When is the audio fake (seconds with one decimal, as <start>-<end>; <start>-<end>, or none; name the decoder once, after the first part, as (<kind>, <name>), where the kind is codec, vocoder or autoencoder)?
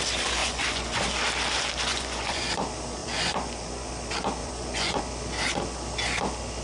0.4-1.0 (vocoder, Vocos); 1.9-2.5; 3.0-3.9; 4.4-5.0